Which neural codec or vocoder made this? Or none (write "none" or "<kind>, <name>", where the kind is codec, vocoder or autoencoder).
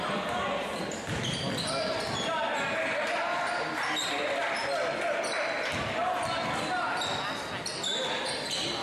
none